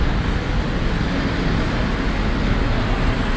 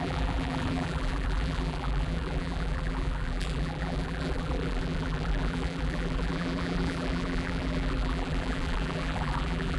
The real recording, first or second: first